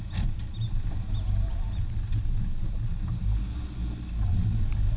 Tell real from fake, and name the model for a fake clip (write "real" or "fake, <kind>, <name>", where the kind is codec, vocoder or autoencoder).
real